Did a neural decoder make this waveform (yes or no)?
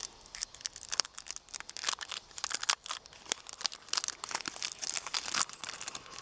no